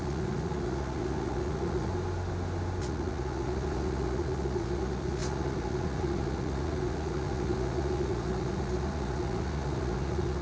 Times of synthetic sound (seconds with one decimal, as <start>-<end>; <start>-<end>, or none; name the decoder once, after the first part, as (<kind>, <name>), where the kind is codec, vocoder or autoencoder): 0.0-1.9 (vocoder, Vocos); 2.8-10.4